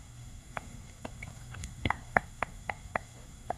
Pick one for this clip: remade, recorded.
remade